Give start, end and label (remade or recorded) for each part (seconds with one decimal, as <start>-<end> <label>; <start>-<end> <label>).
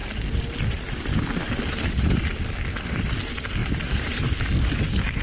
0.0-3.6 recorded; 3.6-4.2 remade; 4.2-5.2 recorded